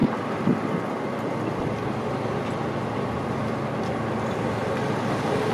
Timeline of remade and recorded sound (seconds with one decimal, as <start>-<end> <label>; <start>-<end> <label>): 0.0-5.5 recorded

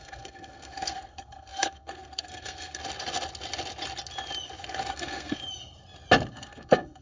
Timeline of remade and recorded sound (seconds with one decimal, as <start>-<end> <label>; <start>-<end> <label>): 0.0-2.8 remade; 2.8-4.9 recorded; 4.9-5.4 remade; 5.4-6.3 recorded; 6.3-7.0 remade

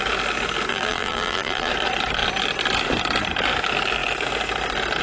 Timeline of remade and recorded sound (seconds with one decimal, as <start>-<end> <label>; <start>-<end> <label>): 0.0-0.7 recorded; 0.7-1.7 remade; 1.7-5.0 recorded

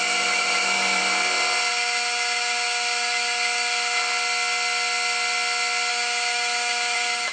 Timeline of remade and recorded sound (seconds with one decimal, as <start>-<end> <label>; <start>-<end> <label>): 0.0-1.0 remade; 1.0-1.7 recorded; 1.7-4.0 remade; 4.0-5.9 recorded; 5.9-7.3 remade